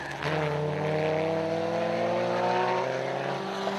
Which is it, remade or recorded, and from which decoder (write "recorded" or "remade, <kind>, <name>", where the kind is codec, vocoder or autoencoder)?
recorded